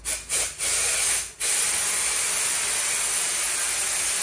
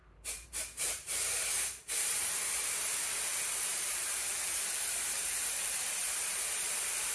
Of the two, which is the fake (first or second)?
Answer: second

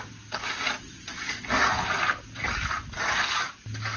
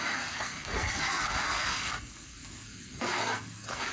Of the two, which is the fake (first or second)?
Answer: second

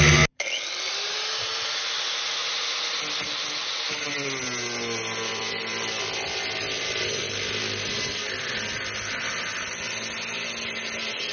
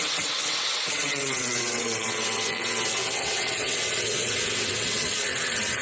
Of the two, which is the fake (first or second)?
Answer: second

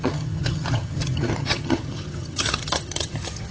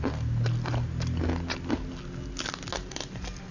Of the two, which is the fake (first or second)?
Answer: first